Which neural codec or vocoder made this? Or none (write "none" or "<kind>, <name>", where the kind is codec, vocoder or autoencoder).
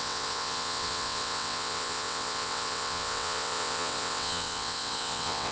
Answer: vocoder, WaveNeXt